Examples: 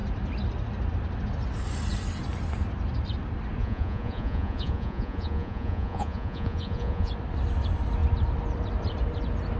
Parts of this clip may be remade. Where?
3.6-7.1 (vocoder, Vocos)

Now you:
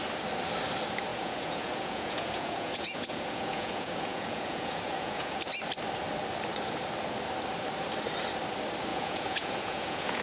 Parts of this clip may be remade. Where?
1.1-5.4 (vocoder, Vocos); 8.9-10.2

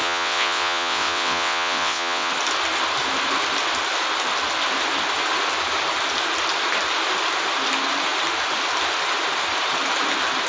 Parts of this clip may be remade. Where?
0.0-2.3 (vocoder, WaveNeXt)

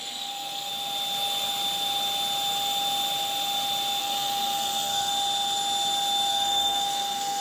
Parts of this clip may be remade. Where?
0.0-0.7 (codec, SNAC); 4.0-5.1; 6.3-7.4

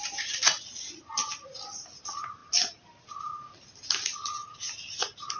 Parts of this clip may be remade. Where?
none

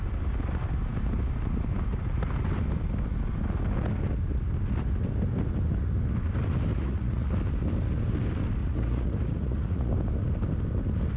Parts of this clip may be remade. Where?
6.7-7.3 (vocoder, Vocos); 8.6-9.9

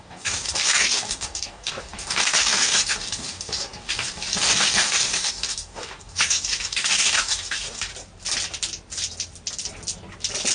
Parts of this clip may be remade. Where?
0.0-7.9 (codec, DAC)